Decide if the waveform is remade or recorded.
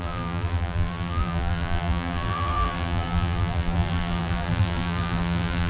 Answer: remade